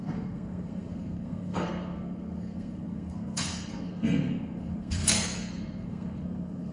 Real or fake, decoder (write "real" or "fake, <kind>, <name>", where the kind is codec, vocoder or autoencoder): fake, codec, SNAC